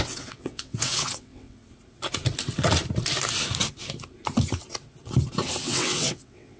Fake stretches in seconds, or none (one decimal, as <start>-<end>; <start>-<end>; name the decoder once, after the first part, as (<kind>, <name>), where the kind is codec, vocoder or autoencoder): 0.0-1.6 (vocoder, WaveNeXt); 5.6-6.6